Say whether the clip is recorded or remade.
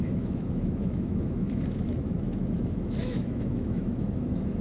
remade